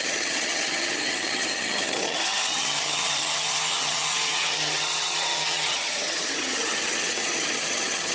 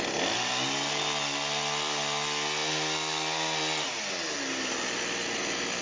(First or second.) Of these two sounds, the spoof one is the first